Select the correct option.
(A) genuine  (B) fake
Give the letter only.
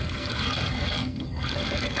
B